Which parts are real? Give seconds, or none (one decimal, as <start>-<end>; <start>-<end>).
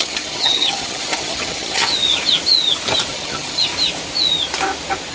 1.9-3.1; 3.7-5.1